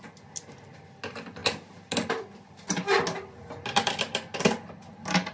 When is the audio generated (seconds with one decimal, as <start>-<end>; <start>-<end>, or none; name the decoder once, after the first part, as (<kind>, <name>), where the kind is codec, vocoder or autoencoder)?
none